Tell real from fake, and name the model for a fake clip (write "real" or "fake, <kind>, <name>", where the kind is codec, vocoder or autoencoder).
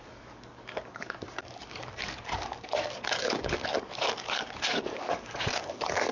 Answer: fake, codec, DAC